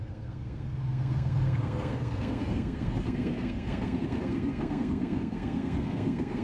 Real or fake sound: fake